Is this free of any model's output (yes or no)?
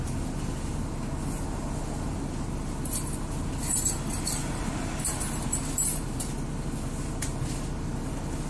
yes